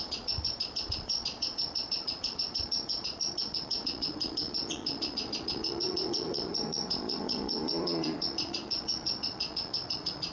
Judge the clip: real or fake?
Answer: fake